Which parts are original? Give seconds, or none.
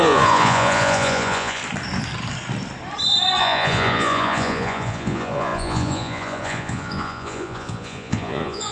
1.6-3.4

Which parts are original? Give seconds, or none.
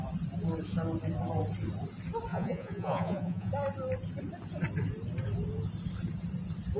0.0-2.3; 3.5-6.8